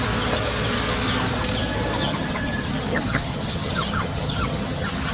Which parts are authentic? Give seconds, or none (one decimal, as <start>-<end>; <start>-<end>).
0.0-2.0